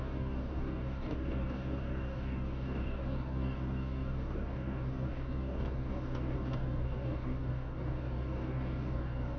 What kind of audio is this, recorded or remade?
remade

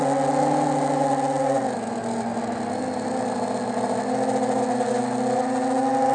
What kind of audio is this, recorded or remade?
recorded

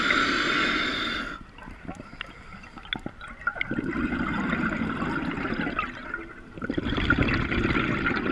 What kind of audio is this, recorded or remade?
recorded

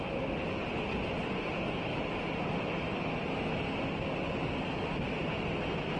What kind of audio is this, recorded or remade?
recorded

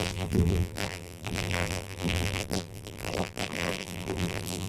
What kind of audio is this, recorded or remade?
remade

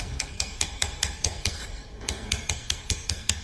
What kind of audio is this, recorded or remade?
remade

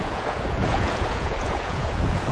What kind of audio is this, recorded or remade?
remade